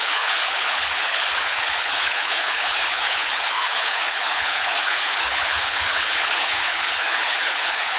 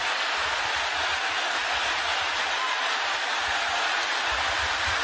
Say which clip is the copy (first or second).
first